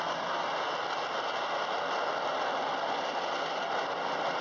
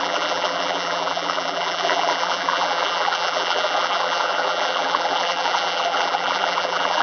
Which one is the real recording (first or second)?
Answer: first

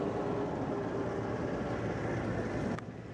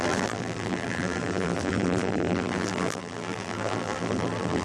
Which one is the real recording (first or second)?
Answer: first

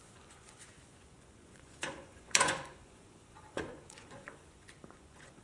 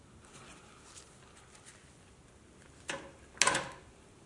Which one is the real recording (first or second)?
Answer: second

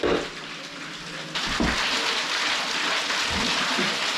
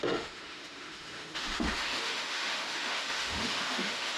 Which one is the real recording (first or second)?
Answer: first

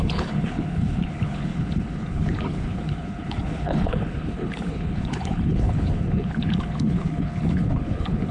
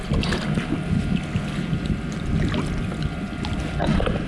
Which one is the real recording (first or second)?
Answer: second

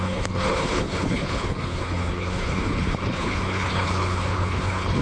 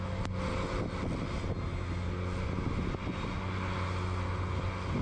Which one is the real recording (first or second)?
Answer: second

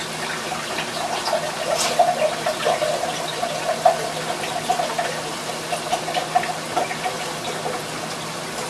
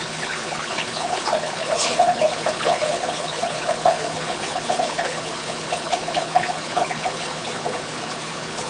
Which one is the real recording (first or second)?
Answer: first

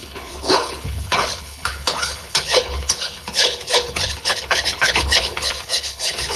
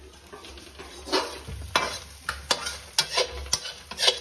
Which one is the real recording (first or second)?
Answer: second